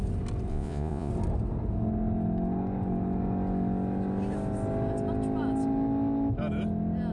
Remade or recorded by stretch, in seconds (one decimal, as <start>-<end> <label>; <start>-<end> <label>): 0.0-0.5 recorded; 0.5-1.1 remade; 1.1-7.1 recorded